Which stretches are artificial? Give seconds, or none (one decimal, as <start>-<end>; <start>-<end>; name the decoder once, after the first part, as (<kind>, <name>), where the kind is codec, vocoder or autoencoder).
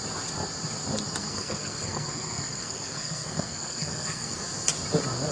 1.2-4.4 (codec, SNAC)